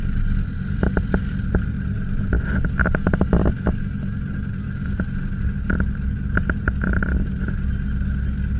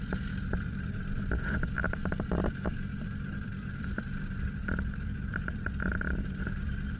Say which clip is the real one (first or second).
first